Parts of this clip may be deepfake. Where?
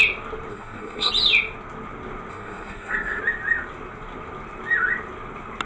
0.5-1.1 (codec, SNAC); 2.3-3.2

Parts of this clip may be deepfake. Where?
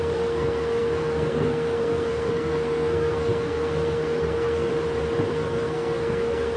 0.0-4.7 (codec, SNAC); 5.3-6.6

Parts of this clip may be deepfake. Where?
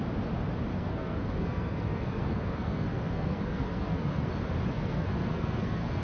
0.7-4.3 (codec, SNAC); 4.7-6.0